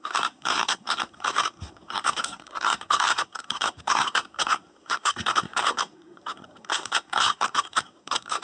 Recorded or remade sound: remade